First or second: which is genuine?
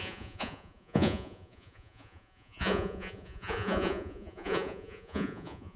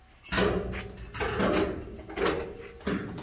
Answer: second